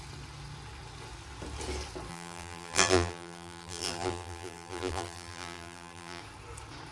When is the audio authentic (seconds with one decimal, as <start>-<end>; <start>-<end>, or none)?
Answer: 0.0-2.1; 6.2-6.9